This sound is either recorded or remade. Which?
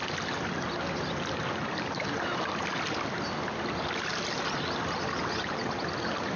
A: recorded